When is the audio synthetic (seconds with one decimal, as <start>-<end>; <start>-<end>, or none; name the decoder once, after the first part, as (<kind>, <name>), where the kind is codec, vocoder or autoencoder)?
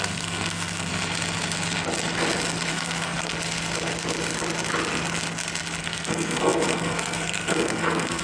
0.0-0.9 (codec, SNAC); 2.7-3.3; 5.8-8.2